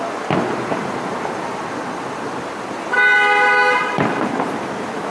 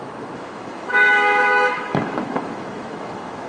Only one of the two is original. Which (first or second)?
first